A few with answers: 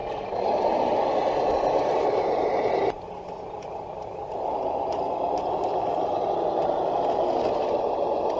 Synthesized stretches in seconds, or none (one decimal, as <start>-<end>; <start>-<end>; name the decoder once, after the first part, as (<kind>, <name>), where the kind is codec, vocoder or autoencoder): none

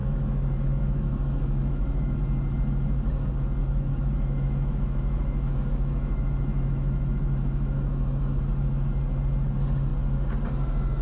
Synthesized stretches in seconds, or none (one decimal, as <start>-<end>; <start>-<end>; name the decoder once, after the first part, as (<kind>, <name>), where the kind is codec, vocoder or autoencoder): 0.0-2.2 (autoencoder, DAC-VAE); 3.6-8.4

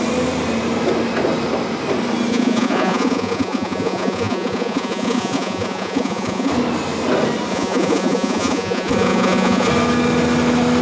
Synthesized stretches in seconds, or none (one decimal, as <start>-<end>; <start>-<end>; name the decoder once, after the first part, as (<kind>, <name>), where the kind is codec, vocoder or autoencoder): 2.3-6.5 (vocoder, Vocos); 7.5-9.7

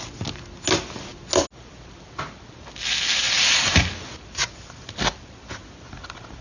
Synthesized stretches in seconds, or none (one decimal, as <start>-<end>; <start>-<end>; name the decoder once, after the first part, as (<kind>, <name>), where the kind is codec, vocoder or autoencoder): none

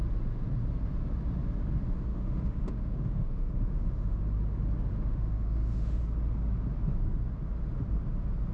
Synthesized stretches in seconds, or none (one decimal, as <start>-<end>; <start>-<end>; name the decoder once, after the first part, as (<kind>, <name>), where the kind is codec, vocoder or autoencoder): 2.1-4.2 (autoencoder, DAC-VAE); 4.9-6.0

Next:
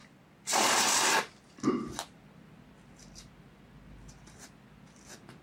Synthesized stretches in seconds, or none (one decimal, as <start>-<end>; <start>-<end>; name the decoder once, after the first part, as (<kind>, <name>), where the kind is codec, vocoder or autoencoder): none

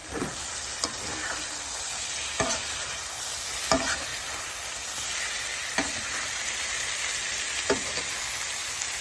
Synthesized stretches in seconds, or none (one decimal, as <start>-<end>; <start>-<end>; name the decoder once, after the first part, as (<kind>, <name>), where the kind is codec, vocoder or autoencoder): none

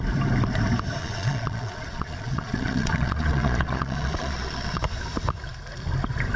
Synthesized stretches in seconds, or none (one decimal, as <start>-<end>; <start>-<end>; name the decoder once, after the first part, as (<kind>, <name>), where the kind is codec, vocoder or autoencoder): 1.0-4.8 (vocoder, Vocos)